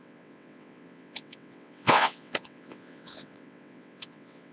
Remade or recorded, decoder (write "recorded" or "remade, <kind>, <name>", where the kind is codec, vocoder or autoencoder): remade, vocoder, WaveNeXt